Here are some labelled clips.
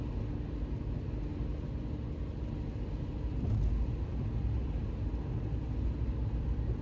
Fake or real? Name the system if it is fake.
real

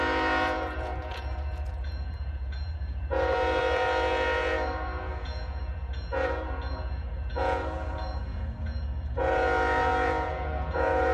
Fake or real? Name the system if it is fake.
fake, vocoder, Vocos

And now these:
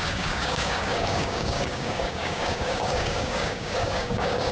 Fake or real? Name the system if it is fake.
fake, codec, DAC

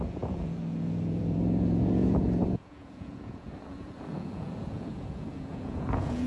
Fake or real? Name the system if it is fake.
fake, vocoder, Vocos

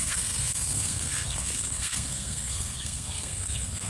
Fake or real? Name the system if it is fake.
fake, codec, SNAC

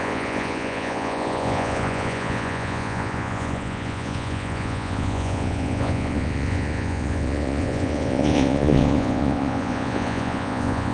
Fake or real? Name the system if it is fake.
fake, vocoder, Vocos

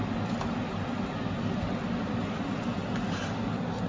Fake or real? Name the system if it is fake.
real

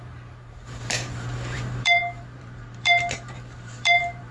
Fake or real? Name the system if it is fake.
fake, vocoder, BigVGAN v2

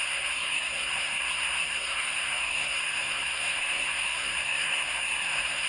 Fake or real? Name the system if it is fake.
fake, codec, SNAC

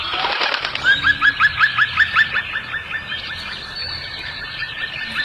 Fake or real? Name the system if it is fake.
real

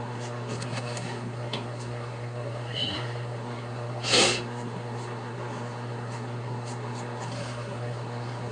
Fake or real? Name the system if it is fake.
fake, codec, SNAC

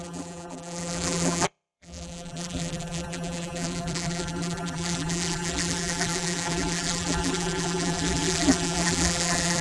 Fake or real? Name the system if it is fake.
fake, vocoder, BigVGAN v2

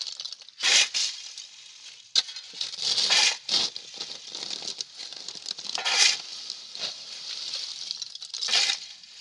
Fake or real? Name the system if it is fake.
real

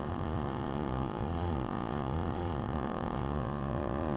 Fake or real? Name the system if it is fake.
fake, vocoder, Vocos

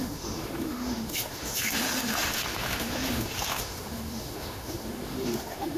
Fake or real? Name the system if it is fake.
fake, autoencoder, DAC-VAE